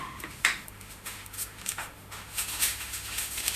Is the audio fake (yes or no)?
yes